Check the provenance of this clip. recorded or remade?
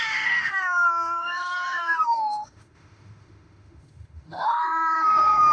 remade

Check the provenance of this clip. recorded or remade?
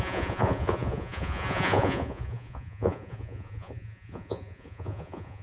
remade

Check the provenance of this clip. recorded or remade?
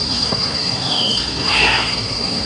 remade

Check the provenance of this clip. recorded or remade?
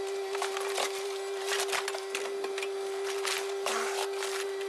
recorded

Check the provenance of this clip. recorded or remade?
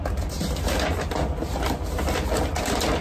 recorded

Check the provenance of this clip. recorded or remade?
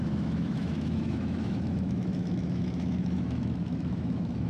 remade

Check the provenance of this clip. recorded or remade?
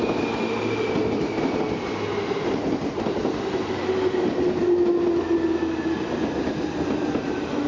recorded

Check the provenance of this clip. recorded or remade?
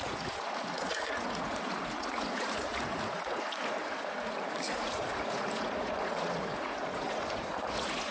remade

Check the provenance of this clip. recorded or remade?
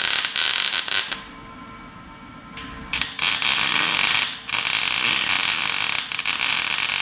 recorded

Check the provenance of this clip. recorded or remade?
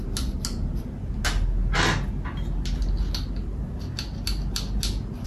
recorded